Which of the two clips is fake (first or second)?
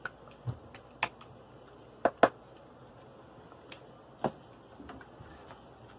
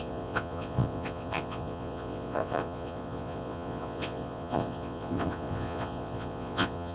second